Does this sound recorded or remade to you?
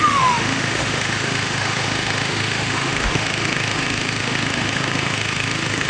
remade